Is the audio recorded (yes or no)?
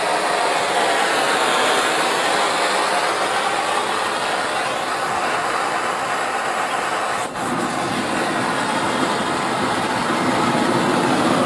yes